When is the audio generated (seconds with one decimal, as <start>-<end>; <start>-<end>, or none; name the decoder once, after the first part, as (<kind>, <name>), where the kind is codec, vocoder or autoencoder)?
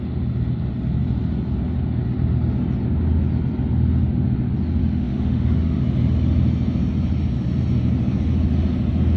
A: 4.8-5.8 (autoencoder, DAC-VAE)